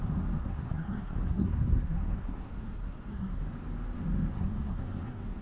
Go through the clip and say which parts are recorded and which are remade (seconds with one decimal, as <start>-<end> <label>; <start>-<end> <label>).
0.0-0.4 recorded; 0.4-3.4 remade; 3.4-4.3 recorded; 4.3-5.4 remade